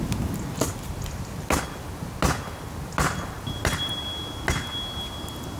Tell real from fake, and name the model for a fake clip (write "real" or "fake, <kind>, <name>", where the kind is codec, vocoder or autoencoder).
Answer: real